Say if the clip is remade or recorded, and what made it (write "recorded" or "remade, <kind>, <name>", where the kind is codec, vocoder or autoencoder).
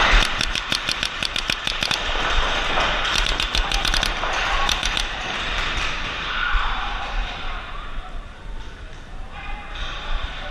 remade, vocoder, BigVGAN v2